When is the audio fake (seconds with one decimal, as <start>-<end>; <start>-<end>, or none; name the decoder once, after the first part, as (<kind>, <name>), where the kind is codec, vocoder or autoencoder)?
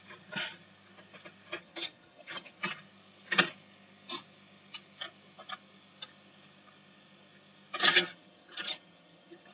1.6-2.6 (vocoder, HiFi-GAN); 7.9-9.5